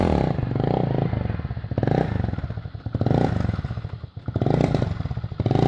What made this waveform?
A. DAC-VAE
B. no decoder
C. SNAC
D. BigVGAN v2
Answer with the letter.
B